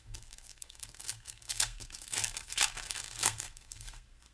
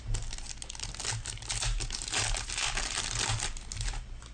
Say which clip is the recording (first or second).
second